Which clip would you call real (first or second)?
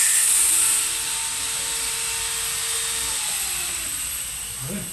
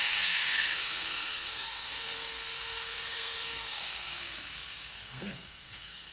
first